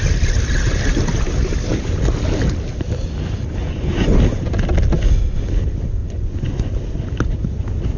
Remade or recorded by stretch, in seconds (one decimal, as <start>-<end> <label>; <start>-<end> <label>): 0.0-3.6 recorded; 3.6-4.2 remade; 4.2-6.0 recorded; 6.0-6.7 remade; 6.7-8.0 recorded